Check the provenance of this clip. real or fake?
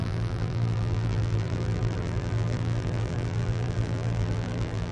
fake